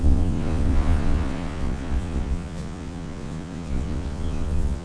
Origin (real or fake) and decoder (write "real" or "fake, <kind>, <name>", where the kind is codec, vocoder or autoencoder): fake, vocoder, Vocos